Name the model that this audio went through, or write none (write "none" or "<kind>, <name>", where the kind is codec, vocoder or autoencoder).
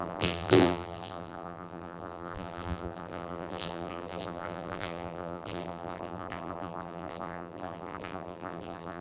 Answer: vocoder, BigVGAN v2